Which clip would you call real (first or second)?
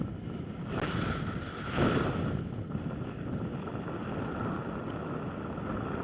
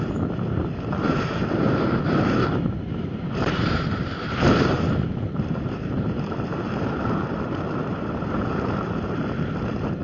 first